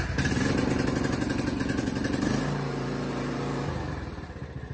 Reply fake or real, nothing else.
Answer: fake